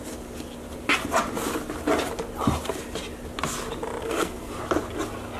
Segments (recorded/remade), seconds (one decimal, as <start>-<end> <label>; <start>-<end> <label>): 0.0-4.0 recorded; 4.0-4.5 remade; 4.5-5.4 recorded